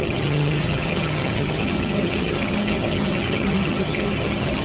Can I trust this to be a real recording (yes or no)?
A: no